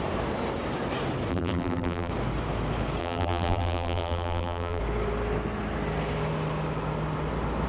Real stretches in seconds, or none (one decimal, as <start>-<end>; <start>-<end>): 0.0-1.3; 2.1-3.0; 4.8-7.7